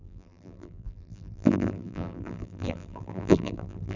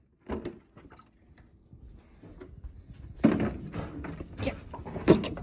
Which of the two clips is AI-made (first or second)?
first